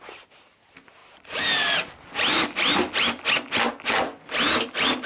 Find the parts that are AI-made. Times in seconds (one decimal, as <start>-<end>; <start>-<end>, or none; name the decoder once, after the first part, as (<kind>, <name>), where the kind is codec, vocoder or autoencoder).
none